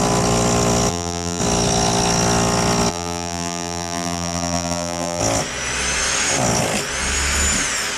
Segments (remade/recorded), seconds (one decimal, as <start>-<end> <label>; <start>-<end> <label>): 0.0-0.9 recorded; 0.9-1.4 remade; 1.4-2.9 recorded; 2.9-5.2 remade; 5.2-8.0 recorded